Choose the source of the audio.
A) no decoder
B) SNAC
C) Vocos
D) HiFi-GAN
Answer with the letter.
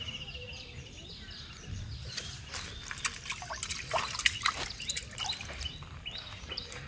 A